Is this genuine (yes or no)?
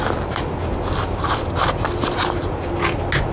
yes